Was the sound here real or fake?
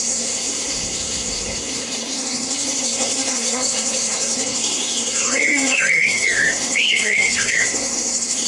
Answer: fake